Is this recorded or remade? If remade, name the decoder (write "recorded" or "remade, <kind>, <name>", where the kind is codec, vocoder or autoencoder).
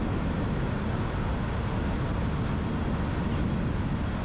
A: recorded